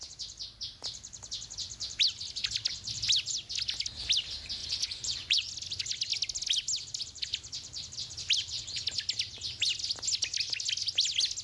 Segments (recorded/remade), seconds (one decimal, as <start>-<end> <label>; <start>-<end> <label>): 0.0-4.6 recorded; 4.6-5.5 remade; 5.5-11.4 recorded